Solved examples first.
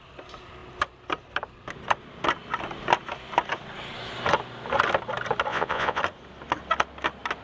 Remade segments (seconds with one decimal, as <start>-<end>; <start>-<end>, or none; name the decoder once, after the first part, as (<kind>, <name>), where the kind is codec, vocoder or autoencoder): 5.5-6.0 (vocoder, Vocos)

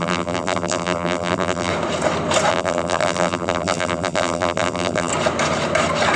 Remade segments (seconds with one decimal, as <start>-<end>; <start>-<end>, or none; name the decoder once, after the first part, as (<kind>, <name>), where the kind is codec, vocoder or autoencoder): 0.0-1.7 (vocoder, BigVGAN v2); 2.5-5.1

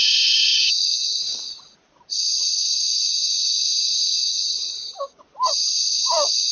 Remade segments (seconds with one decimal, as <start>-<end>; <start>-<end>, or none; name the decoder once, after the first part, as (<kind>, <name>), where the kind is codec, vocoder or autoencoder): 0.5-1.5 (codec, DAC); 4.2-5.2